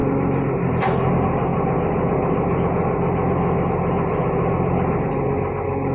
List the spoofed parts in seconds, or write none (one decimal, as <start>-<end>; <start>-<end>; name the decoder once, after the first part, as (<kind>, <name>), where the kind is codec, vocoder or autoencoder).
none